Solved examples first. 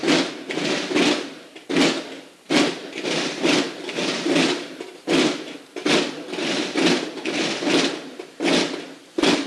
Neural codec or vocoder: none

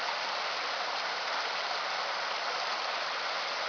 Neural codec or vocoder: none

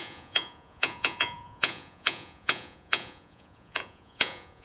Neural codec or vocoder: vocoder, Vocos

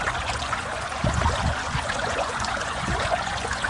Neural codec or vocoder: vocoder, Vocos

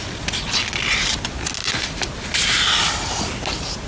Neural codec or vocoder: none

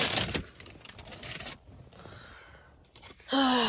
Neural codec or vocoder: none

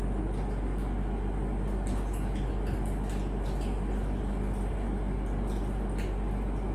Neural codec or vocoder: none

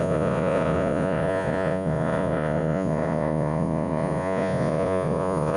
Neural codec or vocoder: vocoder, Vocos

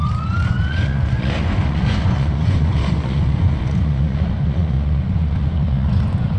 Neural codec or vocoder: vocoder, Vocos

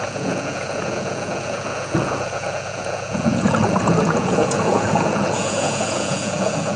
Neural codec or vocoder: vocoder, Vocos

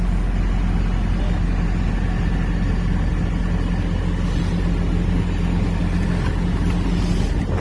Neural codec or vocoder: none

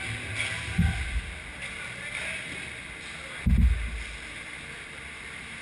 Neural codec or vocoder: none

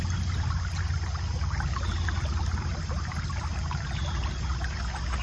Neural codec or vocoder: none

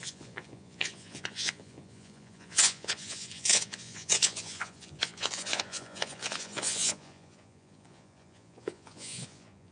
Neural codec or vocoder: vocoder, Vocos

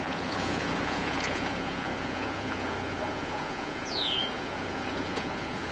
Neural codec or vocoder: vocoder, Vocos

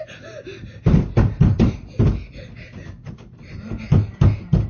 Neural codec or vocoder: none